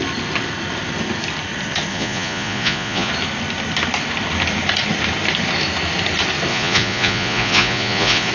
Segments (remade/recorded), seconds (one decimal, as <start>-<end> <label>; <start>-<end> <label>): 0.0-1.9 recorded; 1.9-3.1 remade; 3.1-6.5 recorded; 6.5-8.3 remade